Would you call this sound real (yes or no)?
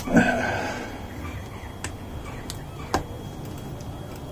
yes